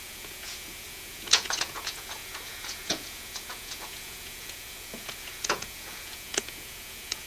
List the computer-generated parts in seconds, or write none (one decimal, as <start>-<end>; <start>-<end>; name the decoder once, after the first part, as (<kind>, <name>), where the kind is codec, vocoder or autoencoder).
0.0-7.3 (vocoder, Vocos)